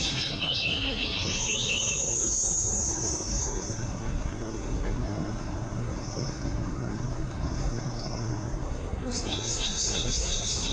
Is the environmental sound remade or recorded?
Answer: remade